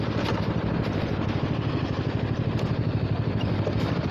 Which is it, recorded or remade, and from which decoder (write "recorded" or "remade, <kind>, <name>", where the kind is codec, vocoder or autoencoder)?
recorded